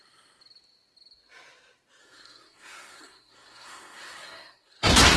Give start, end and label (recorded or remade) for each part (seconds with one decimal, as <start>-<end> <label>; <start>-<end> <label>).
0.0-2.0 recorded; 2.0-5.2 remade